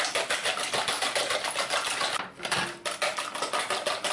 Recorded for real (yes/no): yes